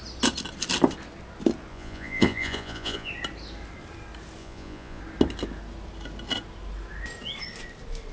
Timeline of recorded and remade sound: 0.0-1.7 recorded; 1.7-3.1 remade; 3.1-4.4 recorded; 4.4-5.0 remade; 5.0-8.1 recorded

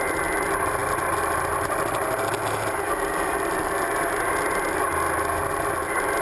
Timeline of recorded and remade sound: 0.0-6.2 recorded

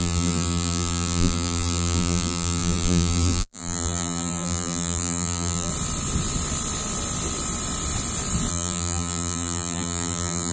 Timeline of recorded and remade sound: 0.0-5.7 remade; 5.7-8.5 recorded; 8.5-10.5 remade

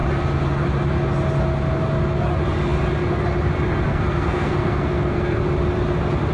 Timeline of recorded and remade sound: 0.0-3.9 recorded; 3.9-5.4 remade; 5.4-6.3 recorded

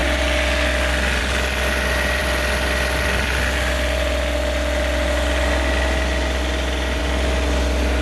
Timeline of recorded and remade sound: 0.0-8.0 recorded

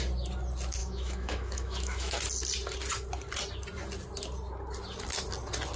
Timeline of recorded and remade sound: 0.0-0.8 recorded; 0.8-2.2 remade; 2.2-5.8 recorded